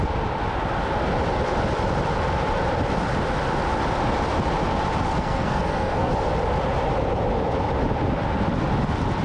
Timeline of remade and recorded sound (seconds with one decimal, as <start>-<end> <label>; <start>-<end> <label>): 0.0-5.1 recorded; 5.1-6.1 remade; 6.1-9.2 recorded